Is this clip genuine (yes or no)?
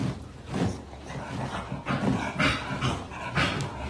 yes